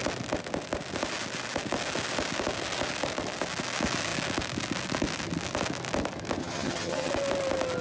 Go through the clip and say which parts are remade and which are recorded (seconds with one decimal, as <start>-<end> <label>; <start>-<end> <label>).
0.0-6.4 recorded; 6.4-7.1 remade; 7.1-7.8 recorded